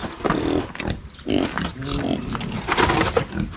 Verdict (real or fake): real